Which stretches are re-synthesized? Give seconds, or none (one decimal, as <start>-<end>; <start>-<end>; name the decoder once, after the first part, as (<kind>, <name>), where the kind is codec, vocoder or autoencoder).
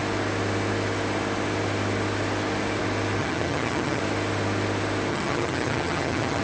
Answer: 3.2-4.0 (vocoder, HiFi-GAN); 5.1-6.4